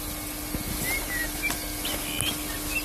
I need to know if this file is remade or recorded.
recorded